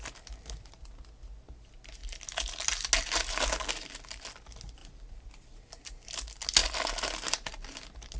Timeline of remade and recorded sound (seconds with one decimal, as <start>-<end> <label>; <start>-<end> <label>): 0.0-4.8 recorded; 4.8-5.8 remade; 5.8-8.2 recorded